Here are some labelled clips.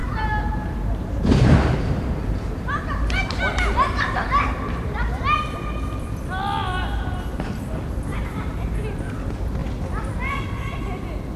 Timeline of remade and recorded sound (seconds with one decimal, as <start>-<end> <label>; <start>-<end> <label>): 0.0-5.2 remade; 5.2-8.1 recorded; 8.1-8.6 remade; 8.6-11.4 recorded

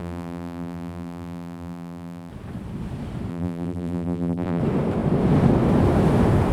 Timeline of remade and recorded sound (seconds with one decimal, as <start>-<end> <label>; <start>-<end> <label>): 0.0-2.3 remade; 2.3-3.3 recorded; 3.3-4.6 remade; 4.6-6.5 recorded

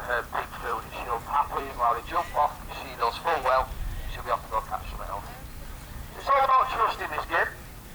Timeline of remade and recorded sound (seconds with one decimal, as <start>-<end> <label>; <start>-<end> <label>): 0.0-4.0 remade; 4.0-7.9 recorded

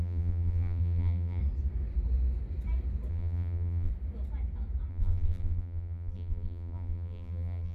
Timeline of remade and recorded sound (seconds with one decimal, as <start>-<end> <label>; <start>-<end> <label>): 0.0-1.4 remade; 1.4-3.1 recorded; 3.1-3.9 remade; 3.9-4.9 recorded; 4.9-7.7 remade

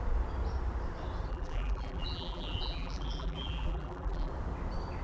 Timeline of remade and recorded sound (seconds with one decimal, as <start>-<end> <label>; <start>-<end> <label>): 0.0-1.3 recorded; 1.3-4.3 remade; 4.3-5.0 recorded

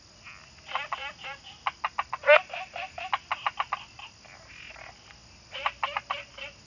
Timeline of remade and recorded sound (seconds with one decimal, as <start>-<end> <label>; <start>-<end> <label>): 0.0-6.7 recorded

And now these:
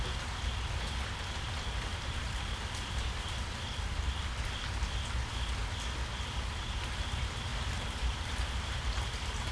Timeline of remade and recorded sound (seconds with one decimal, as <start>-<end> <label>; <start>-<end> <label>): 0.0-1.9 recorded; 1.9-4.9 remade; 4.9-7.5 recorded; 7.5-9.0 remade; 9.0-9.5 recorded

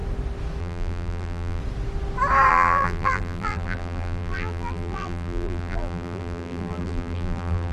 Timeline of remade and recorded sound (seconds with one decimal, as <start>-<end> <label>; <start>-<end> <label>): 0.0-0.6 recorded; 0.6-1.6 remade; 1.6-2.5 recorded; 2.5-7.7 remade